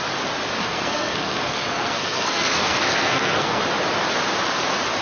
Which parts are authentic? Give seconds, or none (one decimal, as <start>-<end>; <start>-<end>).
0.0-0.6; 3.6-5.0